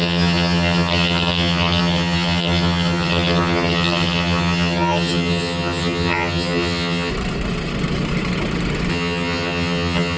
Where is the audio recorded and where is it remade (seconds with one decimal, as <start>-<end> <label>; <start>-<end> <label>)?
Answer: 0.0-7.1 remade; 7.1-8.9 recorded; 8.9-10.2 remade